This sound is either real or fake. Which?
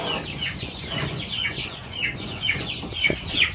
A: fake